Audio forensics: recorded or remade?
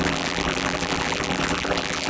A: remade